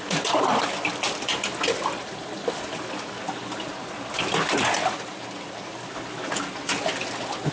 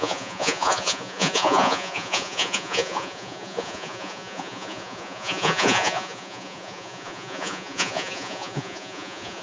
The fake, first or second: second